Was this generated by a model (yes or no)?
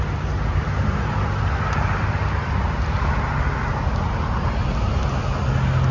no